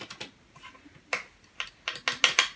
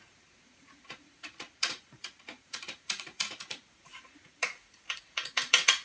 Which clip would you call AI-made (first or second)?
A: second